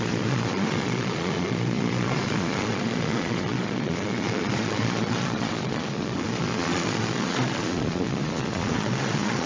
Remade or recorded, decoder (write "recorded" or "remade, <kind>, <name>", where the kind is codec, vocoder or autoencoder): remade, vocoder, Vocos